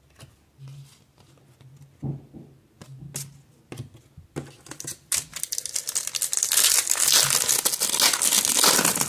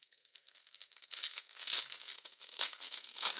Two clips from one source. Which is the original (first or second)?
first